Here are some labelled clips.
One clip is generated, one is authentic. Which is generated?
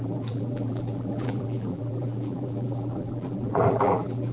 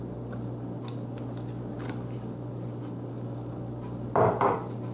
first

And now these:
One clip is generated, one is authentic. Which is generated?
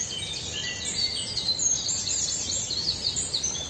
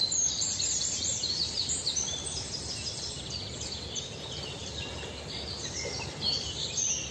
second